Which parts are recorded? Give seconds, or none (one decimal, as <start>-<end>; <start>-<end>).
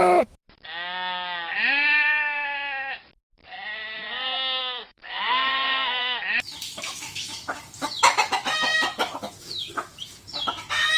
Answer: 0.4-4.6